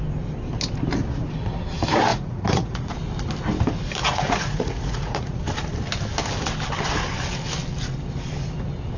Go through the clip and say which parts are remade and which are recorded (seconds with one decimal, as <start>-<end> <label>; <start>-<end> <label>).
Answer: 0.0-2.1 recorded; 2.1-2.9 remade; 2.9-4.0 recorded; 4.0-5.4 remade; 5.4-9.0 recorded